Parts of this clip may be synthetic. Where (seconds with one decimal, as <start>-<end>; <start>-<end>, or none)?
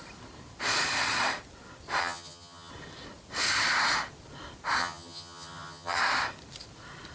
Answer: 2.0-2.7; 4.8-6.0